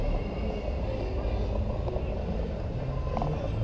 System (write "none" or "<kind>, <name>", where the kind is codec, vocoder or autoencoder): none